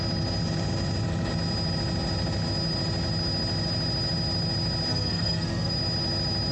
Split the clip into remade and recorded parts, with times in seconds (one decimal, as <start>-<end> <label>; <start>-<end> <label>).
0.0-4.9 recorded; 4.9-5.7 remade; 5.7-6.5 recorded